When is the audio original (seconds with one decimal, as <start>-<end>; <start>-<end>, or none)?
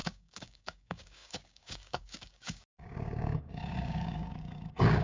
none